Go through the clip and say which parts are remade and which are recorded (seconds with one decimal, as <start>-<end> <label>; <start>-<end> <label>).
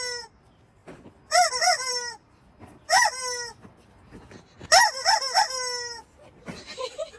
0.0-7.2 recorded